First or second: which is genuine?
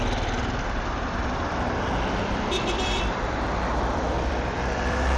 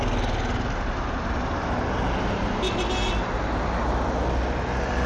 second